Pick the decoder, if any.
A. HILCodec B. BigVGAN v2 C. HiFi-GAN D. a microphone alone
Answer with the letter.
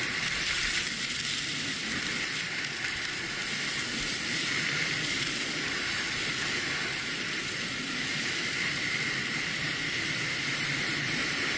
B